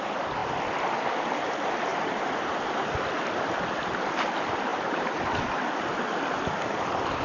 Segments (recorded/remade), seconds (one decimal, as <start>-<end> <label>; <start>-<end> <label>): 0.0-1.9 recorded; 1.9-2.6 remade; 2.6-4.7 recorded; 4.7-5.2 remade; 5.2-7.2 recorded